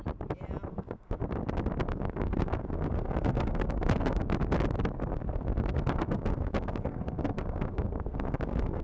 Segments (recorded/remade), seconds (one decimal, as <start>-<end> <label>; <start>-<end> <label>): 0.0-0.7 recorded; 0.7-1.2 remade; 1.2-1.8 recorded; 1.8-4.2 remade; 4.2-5.1 recorded; 5.1-8.8 remade